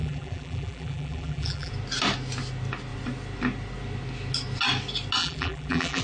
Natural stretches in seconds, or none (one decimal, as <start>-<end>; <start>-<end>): 1.7-5.2